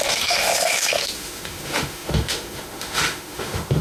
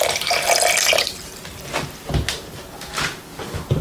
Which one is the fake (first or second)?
first